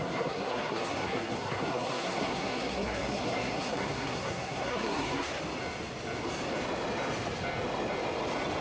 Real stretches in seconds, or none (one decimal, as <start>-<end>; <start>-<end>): 5.3-8.6